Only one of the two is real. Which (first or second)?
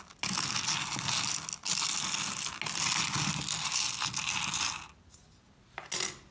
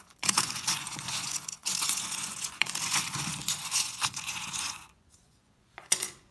first